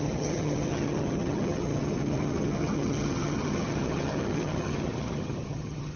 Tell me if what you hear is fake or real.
fake